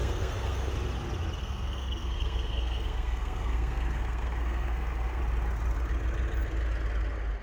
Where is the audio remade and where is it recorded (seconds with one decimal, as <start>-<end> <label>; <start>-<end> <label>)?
0.0-0.7 remade; 0.7-1.4 recorded; 1.4-5.2 remade; 5.2-7.4 recorded